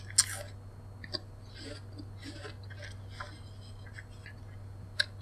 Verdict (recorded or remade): recorded